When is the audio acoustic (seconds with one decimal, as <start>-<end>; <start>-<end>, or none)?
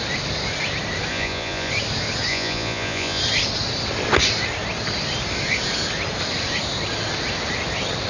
0.0-1.1; 1.7-2.3; 3.2-8.1